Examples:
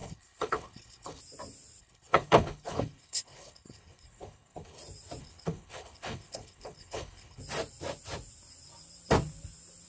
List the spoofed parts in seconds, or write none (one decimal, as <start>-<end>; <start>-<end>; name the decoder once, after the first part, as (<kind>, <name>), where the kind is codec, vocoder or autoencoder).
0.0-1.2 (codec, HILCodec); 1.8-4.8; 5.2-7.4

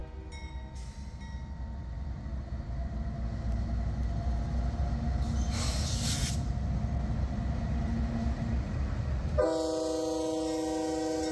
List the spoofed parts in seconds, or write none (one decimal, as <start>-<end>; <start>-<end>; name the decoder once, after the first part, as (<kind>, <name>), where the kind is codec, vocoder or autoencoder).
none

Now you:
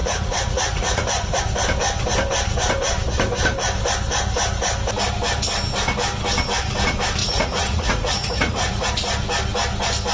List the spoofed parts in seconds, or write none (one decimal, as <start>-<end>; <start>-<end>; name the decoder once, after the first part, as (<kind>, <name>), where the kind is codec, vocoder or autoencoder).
0.0-1.4 (vocoder, Vocos); 7.2-8.9